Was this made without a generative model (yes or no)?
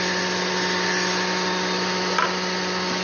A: yes